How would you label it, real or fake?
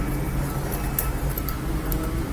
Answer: real